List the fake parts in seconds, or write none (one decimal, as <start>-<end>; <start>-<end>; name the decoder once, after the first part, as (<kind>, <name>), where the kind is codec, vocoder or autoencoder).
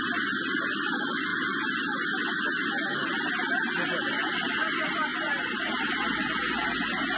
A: 5.1-6.7 (vocoder, BigVGAN v2)